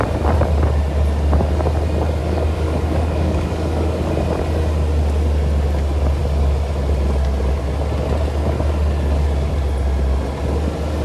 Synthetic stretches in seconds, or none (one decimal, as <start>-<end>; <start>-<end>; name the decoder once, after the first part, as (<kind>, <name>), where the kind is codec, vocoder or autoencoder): 2.2-4.1 (codec, DAC)